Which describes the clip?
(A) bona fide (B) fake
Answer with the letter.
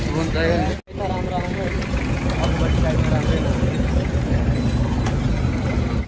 A